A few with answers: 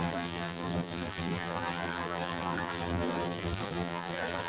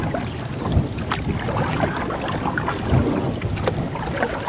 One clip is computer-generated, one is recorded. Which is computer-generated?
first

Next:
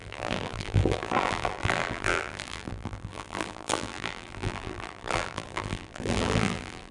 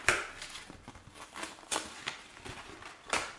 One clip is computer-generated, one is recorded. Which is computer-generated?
first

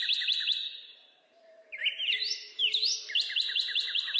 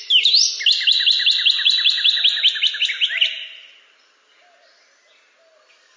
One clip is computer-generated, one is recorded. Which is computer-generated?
first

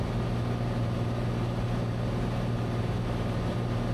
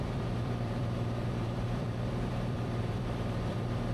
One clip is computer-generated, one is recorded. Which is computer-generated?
second